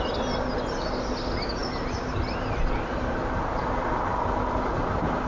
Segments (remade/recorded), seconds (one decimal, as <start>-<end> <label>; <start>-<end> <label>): 0.0-5.3 recorded